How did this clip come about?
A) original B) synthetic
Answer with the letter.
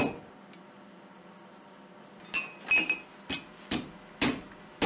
A